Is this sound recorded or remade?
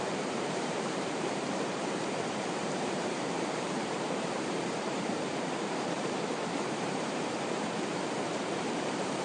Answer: remade